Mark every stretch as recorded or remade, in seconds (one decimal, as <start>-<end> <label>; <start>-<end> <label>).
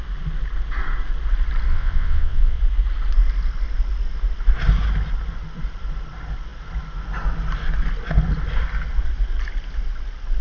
0.0-1.7 recorded; 1.7-2.6 remade; 2.6-10.4 recorded